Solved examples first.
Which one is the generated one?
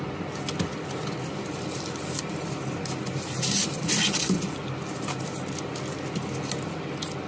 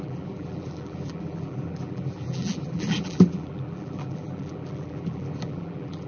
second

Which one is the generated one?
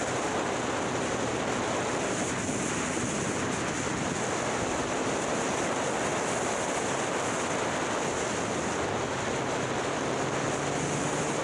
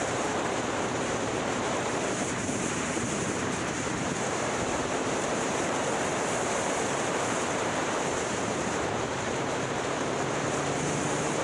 second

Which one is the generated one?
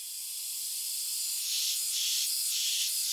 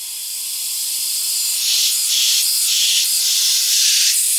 first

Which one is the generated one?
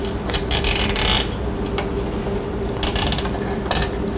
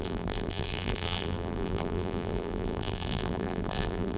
second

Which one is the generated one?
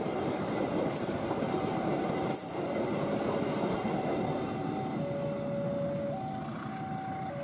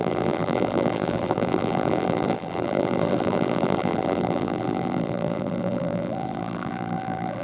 second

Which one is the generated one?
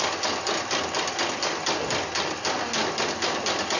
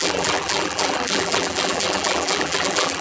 second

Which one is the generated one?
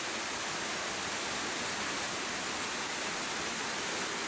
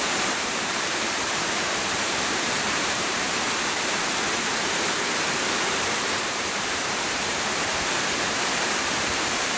second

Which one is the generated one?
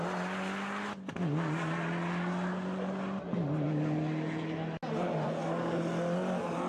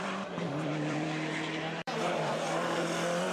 second